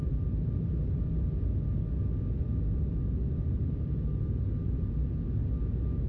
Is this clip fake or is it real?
real